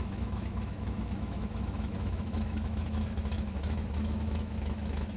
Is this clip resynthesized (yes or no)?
yes